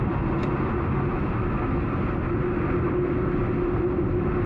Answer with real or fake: real